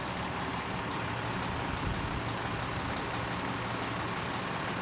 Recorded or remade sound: recorded